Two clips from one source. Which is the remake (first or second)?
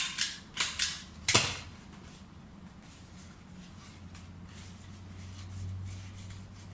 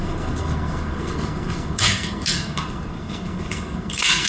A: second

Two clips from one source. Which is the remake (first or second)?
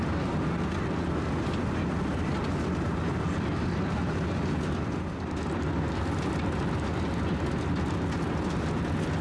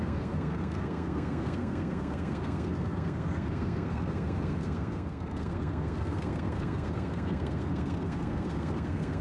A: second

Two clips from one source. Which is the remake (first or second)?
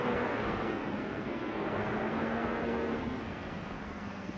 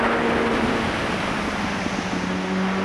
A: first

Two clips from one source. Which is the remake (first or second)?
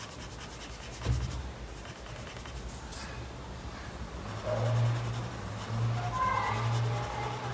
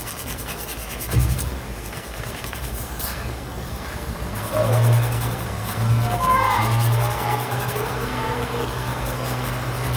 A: second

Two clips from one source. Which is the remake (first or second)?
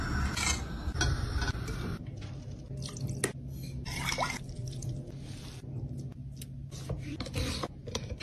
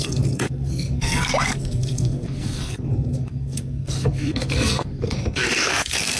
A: second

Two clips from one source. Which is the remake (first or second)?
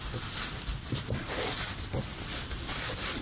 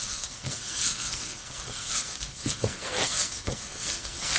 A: second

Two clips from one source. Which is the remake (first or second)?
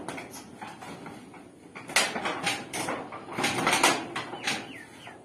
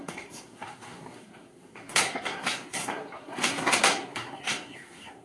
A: second